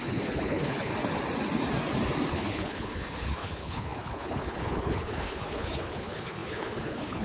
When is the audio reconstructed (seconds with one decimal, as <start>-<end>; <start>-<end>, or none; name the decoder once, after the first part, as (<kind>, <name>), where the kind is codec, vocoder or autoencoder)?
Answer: 0.0-0.9 (codec, HILCodec); 2.3-7.2